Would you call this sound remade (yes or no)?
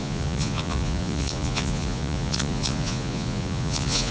yes